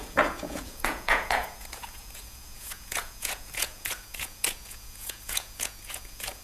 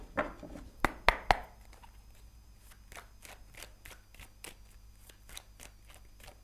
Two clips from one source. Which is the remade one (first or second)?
first